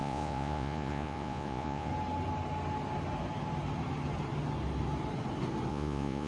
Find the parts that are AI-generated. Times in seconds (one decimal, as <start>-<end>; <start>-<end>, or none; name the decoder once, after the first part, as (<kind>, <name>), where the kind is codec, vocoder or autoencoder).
0.0-1.9 (vocoder, Vocos); 5.7-6.3